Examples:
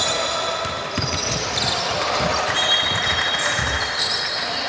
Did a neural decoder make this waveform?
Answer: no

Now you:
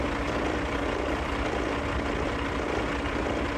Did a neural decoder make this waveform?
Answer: no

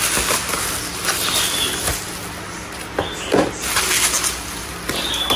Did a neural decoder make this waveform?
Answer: no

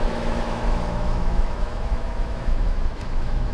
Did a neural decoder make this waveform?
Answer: yes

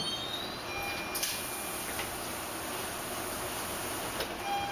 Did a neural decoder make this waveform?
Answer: no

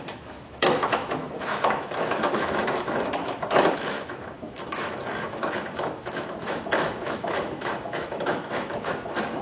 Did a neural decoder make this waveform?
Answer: yes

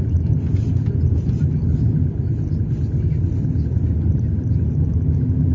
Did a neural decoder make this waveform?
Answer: no